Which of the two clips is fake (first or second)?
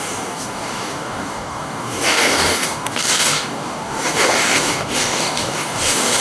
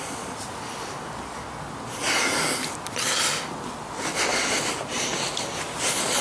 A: first